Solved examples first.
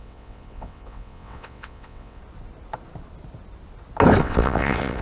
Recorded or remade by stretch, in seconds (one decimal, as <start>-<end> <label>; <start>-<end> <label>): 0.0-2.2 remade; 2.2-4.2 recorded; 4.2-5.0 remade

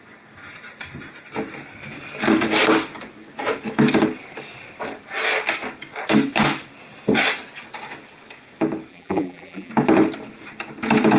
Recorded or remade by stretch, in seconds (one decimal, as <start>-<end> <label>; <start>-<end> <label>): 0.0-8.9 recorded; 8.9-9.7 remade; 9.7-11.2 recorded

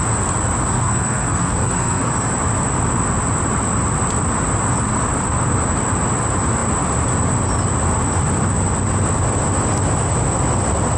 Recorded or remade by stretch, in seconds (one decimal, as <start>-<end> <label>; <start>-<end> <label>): 0.0-0.7 recorded; 0.7-2.1 remade; 2.1-11.0 recorded